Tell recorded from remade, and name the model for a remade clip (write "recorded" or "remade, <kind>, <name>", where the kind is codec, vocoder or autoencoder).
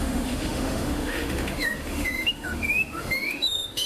remade, autoencoder, DAC-VAE